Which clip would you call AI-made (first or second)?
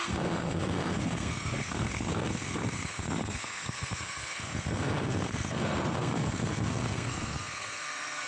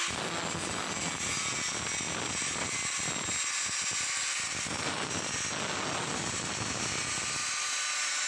first